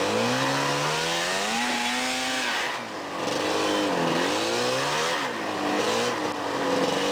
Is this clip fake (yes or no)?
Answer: no